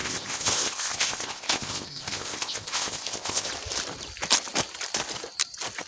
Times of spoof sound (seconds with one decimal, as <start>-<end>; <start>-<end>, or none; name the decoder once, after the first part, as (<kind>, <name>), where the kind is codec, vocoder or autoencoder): 0.0-3.5 (codec, ZipCodec)

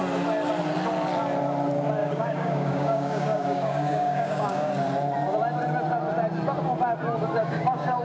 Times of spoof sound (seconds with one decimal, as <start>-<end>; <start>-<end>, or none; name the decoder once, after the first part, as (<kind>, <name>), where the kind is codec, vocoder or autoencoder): 2.0-4.7 (codec, DAC); 7.4-8.0

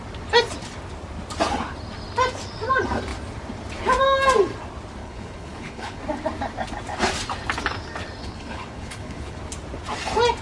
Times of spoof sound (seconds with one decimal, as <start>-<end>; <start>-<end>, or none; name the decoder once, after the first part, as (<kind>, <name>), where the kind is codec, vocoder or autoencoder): 5.0-6.0 (codec, HILCodec); 8.2-9.4

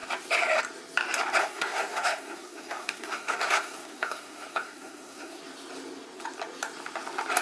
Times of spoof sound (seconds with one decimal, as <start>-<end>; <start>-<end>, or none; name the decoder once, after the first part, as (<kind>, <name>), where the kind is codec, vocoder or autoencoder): 1.4-5.4 (codec, SNAC)

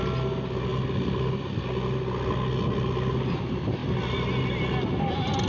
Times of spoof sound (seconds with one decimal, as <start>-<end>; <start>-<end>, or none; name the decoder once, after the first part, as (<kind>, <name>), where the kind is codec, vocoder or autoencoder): none

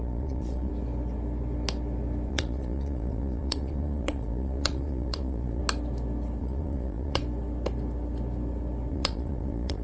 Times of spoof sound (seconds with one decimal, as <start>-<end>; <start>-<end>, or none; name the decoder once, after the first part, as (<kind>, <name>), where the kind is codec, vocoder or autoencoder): 0.0-0.7 (vocoder, Vocos); 2.3-5.6; 6.4-7.2; 8.9-9.8

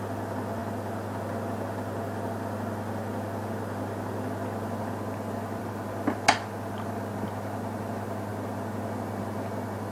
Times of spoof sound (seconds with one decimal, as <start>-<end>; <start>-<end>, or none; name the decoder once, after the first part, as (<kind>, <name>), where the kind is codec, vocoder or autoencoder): none

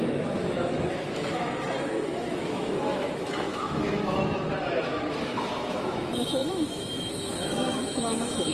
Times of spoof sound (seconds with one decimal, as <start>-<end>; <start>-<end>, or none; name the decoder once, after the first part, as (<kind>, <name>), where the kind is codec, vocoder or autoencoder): 0.0-4.5 (autoencoder, DAC-VAE); 5.1-8.5